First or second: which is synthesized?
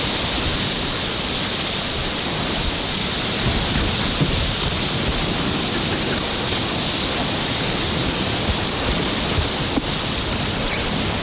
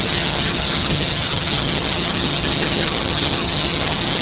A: second